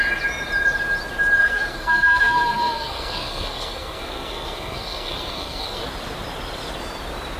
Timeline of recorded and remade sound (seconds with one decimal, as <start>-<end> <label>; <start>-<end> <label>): 0.0-1.4 recorded; 1.4-5.8 remade; 5.8-7.4 recorded